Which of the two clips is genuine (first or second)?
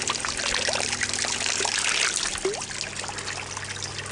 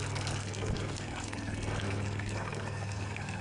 first